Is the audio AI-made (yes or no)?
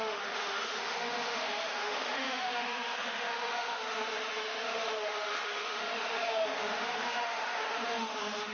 yes